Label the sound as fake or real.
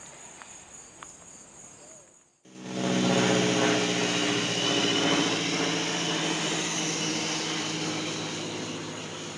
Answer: real